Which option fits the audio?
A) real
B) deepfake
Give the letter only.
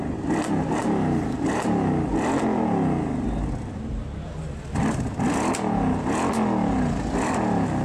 A